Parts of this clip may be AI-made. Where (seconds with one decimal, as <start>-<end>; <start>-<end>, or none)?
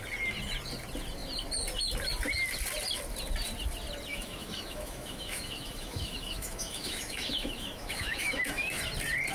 4.1-8.8